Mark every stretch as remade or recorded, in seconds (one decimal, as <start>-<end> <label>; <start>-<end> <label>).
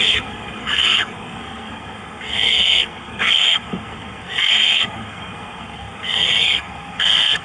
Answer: 0.0-7.4 remade